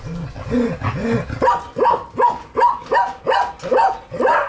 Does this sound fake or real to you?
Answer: real